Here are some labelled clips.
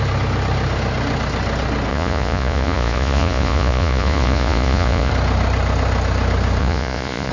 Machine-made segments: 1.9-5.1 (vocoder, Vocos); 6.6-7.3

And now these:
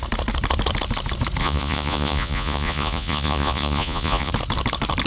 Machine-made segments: 1.4-4.3 (vocoder, Vocos)

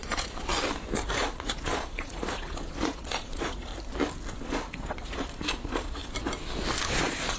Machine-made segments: 0.0-0.5 (vocoder, Vocos); 1.2-3.7; 4.4-6.0; 7.0-7.4

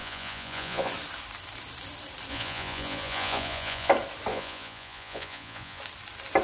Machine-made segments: 0.0-0.9 (vocoder, Vocos); 2.3-3.9; 4.3-5.8

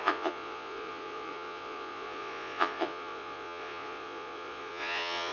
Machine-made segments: 0.0-5.3 (vocoder, Vocos)